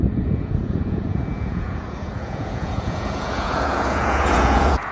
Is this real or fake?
fake